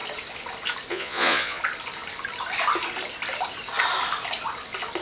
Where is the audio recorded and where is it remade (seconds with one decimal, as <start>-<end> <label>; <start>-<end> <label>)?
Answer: 0.0-0.9 recorded; 0.9-1.6 remade; 1.6-5.0 recorded